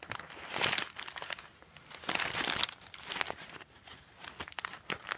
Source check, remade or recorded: recorded